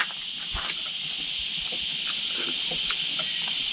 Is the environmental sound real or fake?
real